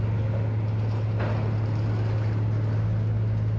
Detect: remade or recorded recorded